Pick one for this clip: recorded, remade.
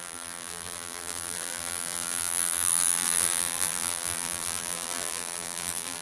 remade